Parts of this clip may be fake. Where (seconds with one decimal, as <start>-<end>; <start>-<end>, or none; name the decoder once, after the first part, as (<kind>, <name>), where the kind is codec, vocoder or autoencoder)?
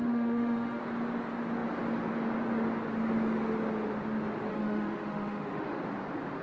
0.0-0.8 (autoencoder, DAC-VAE); 4.5-5.8